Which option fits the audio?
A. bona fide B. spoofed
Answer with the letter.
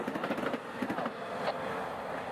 A